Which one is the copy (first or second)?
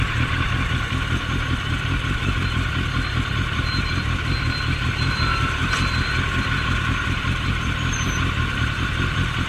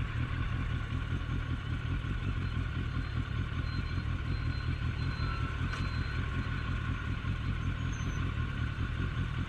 first